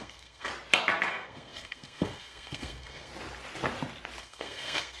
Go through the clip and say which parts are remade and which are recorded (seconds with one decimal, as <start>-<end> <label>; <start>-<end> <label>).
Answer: 0.0-0.5 remade; 0.5-1.1 recorded; 1.1-3.1 remade; 3.1-4.2 recorded; 4.2-5.0 remade